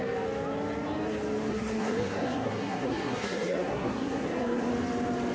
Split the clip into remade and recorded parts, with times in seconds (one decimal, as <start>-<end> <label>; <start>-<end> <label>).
0.0-1.5 recorded; 1.5-4.7 remade; 4.7-5.3 recorded